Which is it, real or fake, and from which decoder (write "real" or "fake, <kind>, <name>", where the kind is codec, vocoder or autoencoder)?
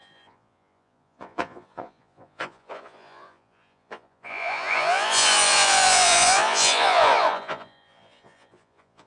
fake, vocoder, Vocos